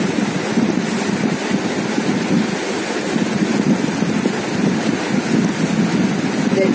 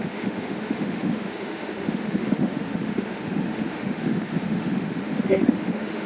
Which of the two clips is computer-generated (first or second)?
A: second